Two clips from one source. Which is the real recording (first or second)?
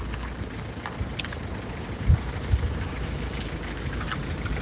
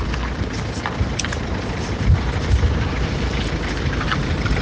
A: first